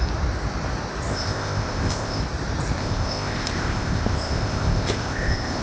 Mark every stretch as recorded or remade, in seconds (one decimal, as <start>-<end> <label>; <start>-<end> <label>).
0.0-1.1 recorded; 1.1-2.2 remade; 2.2-2.8 recorded; 2.8-5.6 remade